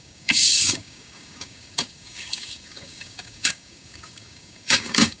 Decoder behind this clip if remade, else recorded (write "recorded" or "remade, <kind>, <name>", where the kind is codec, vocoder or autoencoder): remade, codec, DAC